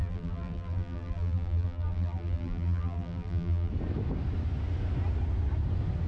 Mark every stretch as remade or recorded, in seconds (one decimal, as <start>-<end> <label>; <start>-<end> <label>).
0.0-3.7 remade; 3.7-6.1 recorded